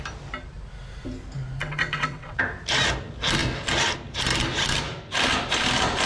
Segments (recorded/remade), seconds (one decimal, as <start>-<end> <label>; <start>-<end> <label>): 0.0-1.6 recorded; 1.6-2.4 remade; 2.4-6.1 recorded